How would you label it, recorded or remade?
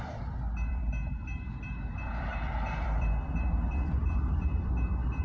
remade